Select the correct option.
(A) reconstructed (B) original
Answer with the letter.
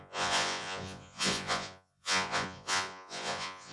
A